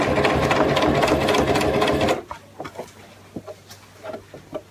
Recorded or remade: recorded